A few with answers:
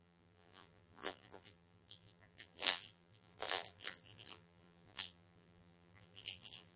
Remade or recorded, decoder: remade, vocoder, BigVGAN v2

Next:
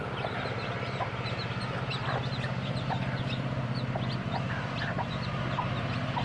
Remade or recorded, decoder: remade, vocoder, BigVGAN v2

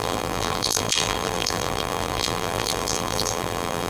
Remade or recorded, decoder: remade, vocoder, BigVGAN v2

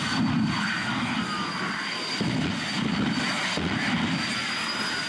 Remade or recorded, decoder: recorded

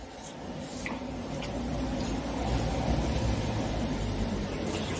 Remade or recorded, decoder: remade, vocoder, BigVGAN v2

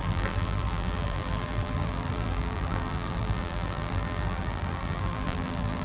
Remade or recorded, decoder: remade, vocoder, BigVGAN v2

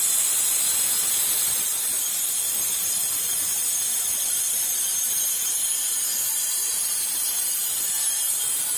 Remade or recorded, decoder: remade, vocoder, BigVGAN v2